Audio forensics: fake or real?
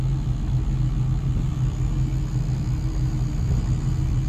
real